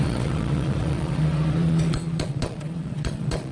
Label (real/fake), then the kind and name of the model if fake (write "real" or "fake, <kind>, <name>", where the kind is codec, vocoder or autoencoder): fake, vocoder, Vocos